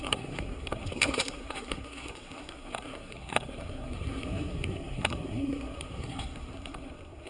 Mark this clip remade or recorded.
remade